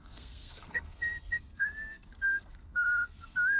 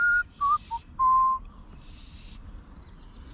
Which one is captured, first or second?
second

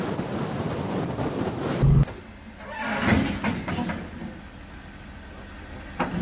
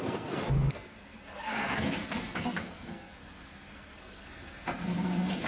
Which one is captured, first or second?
first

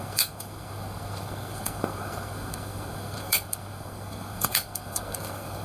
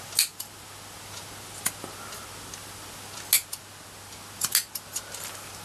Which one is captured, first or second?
second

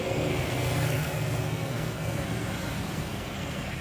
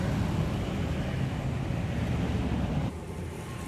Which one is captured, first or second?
second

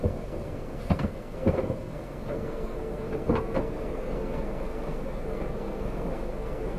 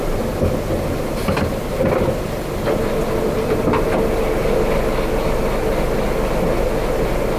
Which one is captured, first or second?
second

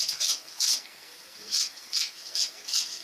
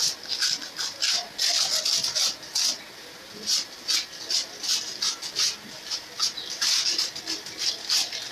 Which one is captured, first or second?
second